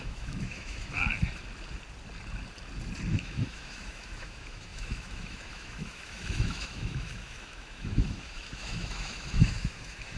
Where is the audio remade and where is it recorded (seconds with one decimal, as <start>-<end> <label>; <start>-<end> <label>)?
0.0-1.1 remade; 1.1-3.1 recorded; 3.1-10.2 remade